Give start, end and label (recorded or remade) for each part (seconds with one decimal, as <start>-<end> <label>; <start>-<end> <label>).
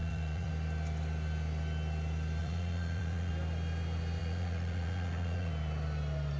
0.0-0.5 remade; 0.5-2.4 recorded; 2.4-3.3 remade; 3.3-4.2 recorded; 4.2-5.5 remade; 5.5-6.4 recorded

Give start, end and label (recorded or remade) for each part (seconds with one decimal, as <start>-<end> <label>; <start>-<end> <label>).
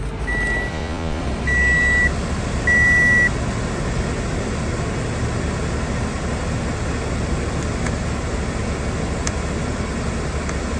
0.0-0.7 recorded; 0.7-1.2 remade; 1.2-10.8 recorded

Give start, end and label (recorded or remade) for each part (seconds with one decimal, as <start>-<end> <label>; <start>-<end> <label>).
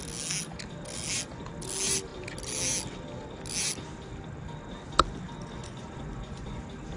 0.0-5.6 recorded; 5.6-6.6 remade; 6.6-7.0 recorded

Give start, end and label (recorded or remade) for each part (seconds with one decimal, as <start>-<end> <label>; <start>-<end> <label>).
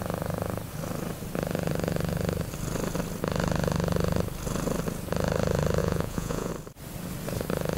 0.0-5.8 recorded; 5.8-6.5 remade; 6.5-7.8 recorded